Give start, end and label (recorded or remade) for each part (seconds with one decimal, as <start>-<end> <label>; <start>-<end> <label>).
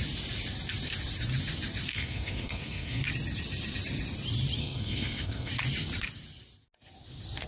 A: 0.0-1.9 recorded; 1.9-3.0 remade; 3.0-4.6 recorded; 4.6-5.5 remade; 5.5-7.5 recorded